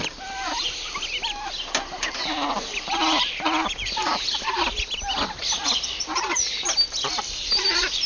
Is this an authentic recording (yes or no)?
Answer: yes